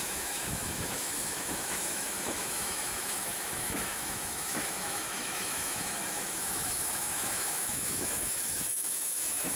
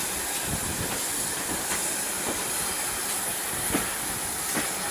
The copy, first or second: first